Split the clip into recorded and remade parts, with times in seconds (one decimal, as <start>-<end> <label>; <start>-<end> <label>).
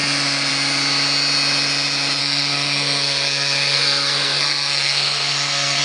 0.0-2.2 recorded; 2.2-5.8 remade